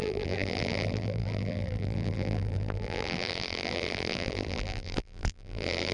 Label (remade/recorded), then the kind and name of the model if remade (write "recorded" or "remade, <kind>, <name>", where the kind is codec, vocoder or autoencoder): remade, vocoder, BigVGAN v2